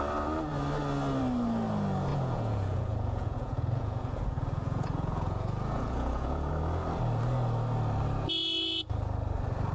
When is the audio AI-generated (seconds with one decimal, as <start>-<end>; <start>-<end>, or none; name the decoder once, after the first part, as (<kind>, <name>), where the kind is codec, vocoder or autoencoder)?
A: 2.1-6.5 (vocoder, Vocos)